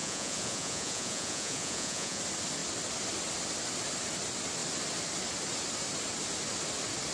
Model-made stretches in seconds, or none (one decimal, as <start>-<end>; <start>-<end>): 0.0-2.2